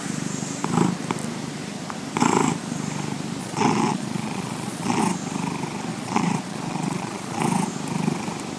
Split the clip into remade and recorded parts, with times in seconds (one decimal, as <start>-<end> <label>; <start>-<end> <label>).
0.0-3.4 recorded; 3.4-5.0 remade; 5.0-5.9 recorded; 5.9-7.4 remade; 7.4-8.6 recorded